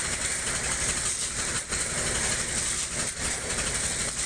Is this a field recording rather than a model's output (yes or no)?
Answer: yes